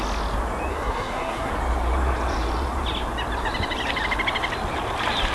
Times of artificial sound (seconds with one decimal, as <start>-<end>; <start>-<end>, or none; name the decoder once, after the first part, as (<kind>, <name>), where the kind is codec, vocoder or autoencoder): 0.7-1.5 (codec, SNAC)